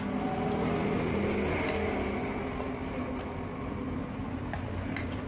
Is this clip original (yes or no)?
yes